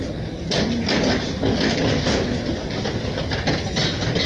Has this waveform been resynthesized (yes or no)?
no